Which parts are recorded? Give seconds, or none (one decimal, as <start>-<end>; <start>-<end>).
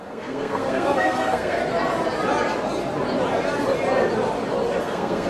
1.6-4.8